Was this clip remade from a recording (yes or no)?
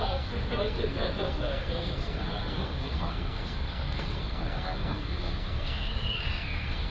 yes